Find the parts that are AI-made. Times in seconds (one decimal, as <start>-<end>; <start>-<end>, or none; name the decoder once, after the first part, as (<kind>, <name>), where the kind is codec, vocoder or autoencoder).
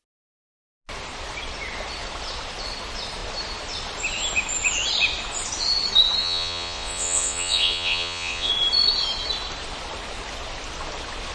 6.2-8.5 (vocoder, Vocos)